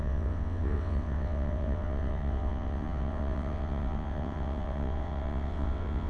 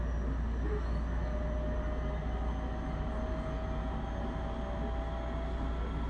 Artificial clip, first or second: first